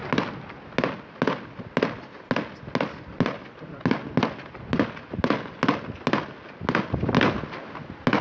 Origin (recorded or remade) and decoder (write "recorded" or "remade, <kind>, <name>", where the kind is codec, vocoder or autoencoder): recorded